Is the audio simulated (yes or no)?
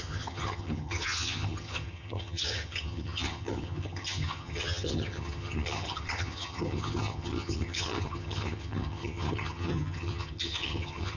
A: yes